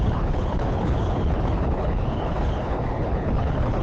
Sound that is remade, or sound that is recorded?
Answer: remade